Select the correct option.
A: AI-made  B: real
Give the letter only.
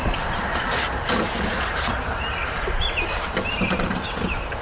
A